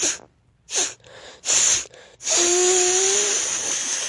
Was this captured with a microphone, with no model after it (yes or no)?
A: no